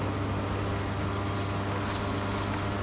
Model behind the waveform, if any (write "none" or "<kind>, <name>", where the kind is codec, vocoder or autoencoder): none